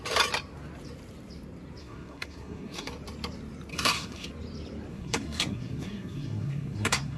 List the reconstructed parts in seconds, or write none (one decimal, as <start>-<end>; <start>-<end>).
1.8-2.9; 3.7-4.3; 4.9-7.2